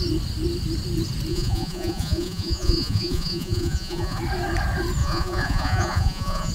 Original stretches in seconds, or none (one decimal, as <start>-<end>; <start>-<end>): 0.0-1.3; 4.2-5.0